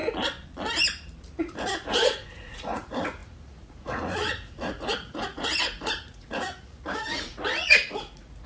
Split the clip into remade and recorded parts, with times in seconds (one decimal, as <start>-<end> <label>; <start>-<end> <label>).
0.0-1.4 recorded; 1.4-8.5 remade